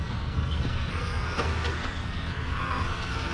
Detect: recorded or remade remade